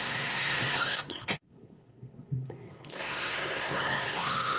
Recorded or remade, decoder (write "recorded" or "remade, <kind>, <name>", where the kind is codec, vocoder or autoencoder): remade, codec, SNAC